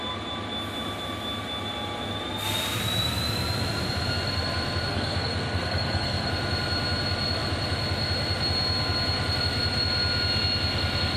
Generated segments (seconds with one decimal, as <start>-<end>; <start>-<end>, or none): 4.9-6.3